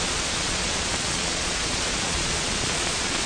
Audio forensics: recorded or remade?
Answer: remade